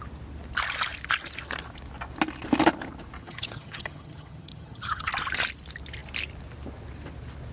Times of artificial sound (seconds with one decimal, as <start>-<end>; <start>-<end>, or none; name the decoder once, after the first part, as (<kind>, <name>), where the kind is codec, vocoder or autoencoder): 3.2-5.1 (vocoder, HiFi-GAN)